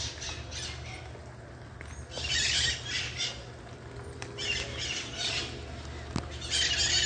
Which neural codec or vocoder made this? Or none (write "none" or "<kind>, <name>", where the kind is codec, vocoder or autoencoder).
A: none